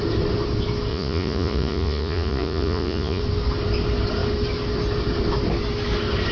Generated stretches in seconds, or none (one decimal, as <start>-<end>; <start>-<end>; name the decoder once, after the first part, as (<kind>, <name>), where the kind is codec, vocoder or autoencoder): 0.9-3.2 (vocoder, Vocos)